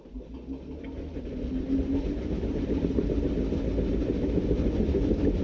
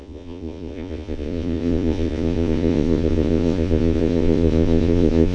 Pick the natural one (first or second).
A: first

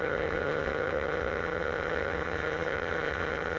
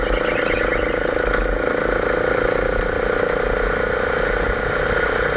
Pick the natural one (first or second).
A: second